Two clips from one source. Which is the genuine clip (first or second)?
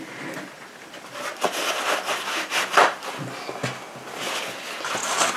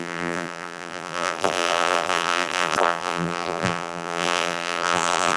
first